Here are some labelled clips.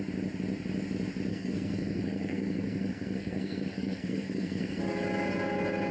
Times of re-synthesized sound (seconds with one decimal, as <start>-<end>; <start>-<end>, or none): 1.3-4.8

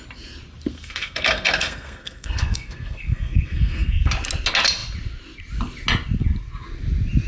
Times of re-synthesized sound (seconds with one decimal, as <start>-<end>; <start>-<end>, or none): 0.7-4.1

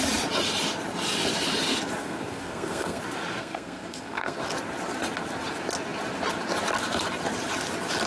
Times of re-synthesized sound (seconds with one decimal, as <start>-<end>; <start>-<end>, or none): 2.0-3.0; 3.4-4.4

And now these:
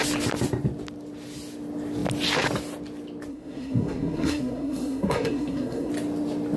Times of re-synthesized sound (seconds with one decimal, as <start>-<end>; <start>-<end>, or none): 3.3-5.9

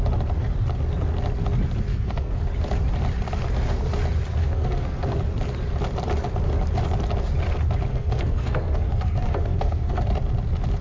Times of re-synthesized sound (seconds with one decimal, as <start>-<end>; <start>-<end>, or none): 1.9-2.5; 4.4-5.2; 7.9-10.0

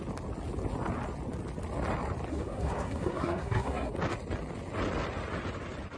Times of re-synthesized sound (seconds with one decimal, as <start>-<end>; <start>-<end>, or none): 2.3-3.9